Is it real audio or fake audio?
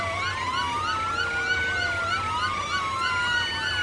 real